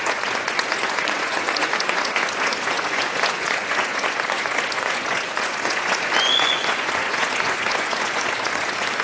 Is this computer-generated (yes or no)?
yes